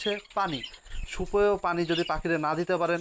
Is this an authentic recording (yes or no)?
yes